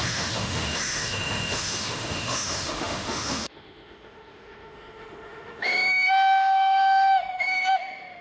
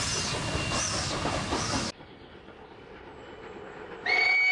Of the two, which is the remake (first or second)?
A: first